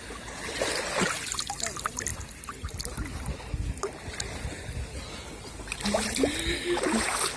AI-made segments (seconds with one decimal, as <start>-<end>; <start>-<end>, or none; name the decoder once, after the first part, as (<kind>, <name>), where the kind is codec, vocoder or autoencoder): none